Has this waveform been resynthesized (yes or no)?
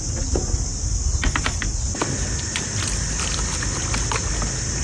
no